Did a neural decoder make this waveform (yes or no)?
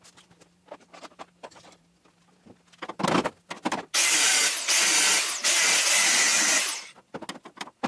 no